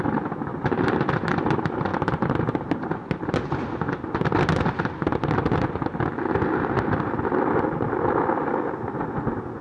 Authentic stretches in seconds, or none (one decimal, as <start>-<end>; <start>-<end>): 0.0-9.6